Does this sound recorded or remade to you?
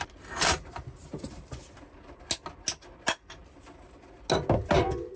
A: recorded